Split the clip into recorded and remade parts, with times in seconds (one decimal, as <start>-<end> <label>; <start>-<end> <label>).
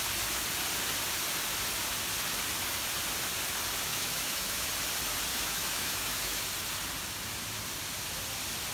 0.0-3.9 recorded; 3.9-4.7 remade; 4.7-5.3 recorded; 5.3-6.4 remade; 6.4-8.7 recorded